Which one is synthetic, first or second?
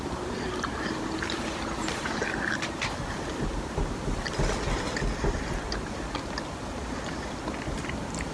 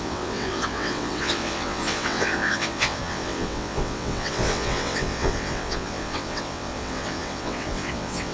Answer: second